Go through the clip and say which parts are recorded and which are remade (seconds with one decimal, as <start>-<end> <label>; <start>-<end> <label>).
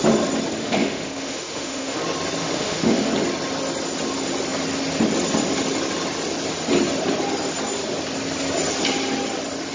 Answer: 0.0-0.6 recorded; 0.6-2.0 remade; 2.0-2.4 recorded; 2.4-3.1 remade; 3.1-9.7 recorded